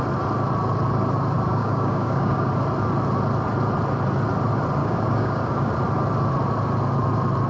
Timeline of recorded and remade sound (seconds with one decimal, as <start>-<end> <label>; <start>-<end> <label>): 0.0-1.5 recorded; 1.5-2.5 remade; 2.5-4.8 recorded; 4.8-5.7 remade; 5.7-7.5 recorded